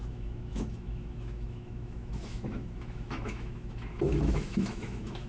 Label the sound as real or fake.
fake